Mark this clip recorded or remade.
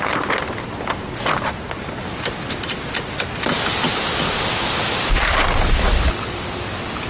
recorded